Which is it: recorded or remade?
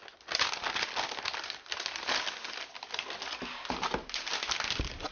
recorded